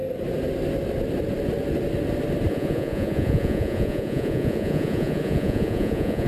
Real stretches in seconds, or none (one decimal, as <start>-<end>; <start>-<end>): 0.0-2.5